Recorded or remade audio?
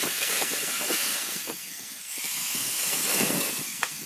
remade